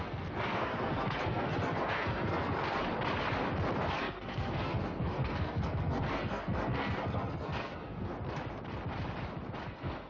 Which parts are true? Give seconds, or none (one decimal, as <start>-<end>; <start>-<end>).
2.8-3.9; 8.1-9.7